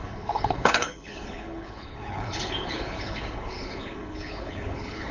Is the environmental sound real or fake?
fake